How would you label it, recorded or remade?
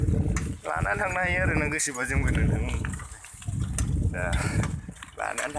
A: recorded